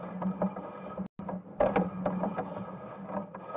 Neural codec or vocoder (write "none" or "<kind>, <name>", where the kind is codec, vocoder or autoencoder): none